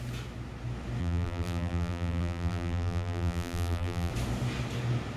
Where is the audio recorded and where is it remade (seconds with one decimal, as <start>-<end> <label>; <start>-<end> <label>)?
0.0-1.0 recorded; 1.0-4.1 remade; 4.1-5.2 recorded